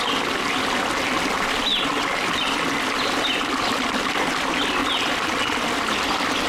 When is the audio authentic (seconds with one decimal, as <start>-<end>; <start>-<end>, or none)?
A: 1.7-2.3; 4.8-5.3